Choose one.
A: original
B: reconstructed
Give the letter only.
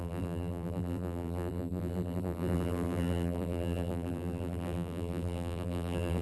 B